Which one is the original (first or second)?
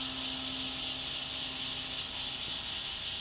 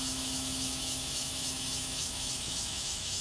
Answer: first